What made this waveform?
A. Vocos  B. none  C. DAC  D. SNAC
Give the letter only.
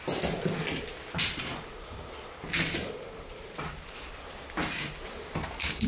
B